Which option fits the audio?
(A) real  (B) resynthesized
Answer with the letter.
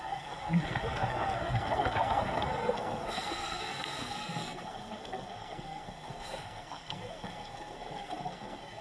B